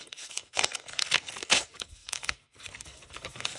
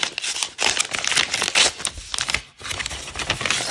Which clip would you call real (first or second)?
second